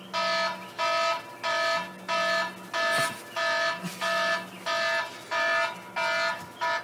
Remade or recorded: recorded